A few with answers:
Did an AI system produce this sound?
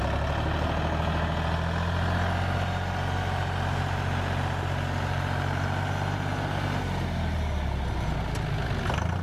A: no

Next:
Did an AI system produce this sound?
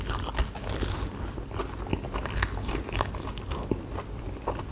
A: no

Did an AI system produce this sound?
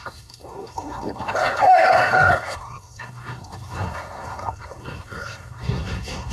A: yes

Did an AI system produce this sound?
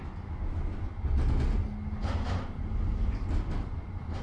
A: no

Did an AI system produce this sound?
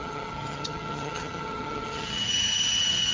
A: yes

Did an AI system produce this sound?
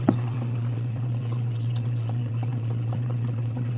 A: yes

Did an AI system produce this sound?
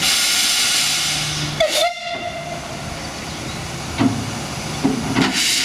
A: no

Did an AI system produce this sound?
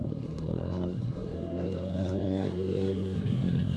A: yes